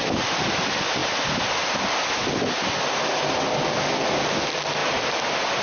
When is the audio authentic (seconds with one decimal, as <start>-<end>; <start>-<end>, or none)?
0.0-5.6